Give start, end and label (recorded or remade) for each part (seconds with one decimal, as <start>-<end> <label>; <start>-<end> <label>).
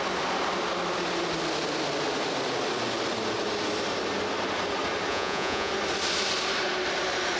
0.0-5.1 recorded; 5.1-5.7 remade; 5.7-7.4 recorded